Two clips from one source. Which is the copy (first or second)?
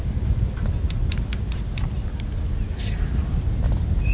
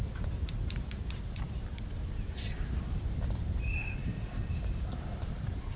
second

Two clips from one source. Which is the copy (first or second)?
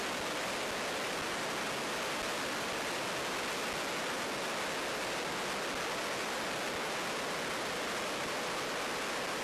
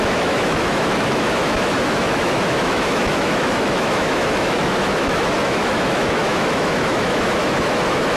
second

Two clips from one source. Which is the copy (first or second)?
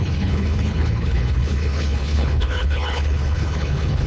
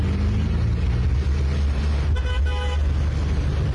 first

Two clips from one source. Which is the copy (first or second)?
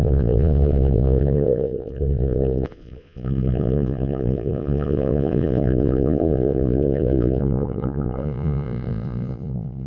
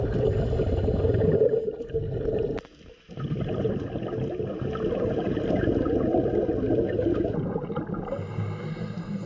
first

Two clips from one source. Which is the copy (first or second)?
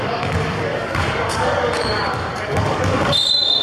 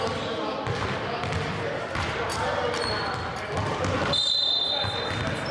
first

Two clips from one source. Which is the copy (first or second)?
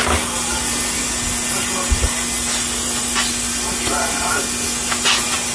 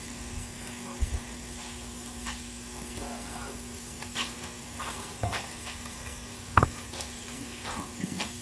second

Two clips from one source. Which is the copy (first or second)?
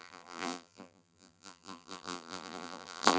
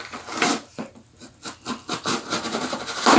first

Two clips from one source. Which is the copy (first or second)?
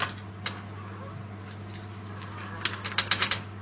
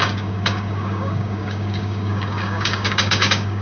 second